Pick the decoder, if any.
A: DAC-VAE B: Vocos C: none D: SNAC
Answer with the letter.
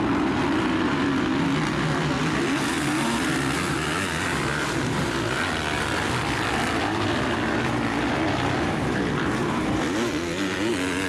C